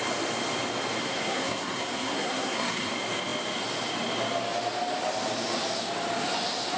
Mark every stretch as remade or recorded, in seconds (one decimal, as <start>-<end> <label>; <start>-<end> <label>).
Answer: 0.0-1.0 recorded; 1.0-2.9 remade; 2.9-6.8 recorded